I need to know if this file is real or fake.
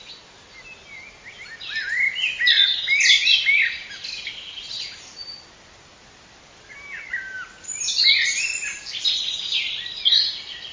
real